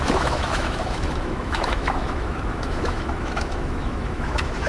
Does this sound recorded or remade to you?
remade